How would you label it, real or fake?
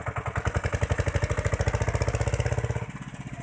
real